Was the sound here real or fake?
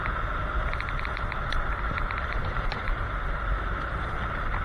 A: fake